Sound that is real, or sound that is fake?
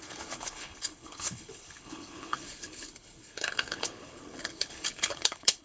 fake